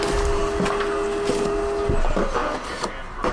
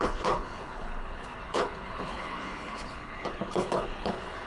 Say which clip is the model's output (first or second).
second